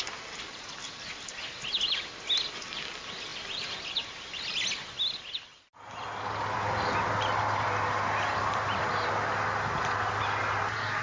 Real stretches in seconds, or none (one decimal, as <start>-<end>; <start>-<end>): 0.0-11.0